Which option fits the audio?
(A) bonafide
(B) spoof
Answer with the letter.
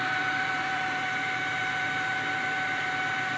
B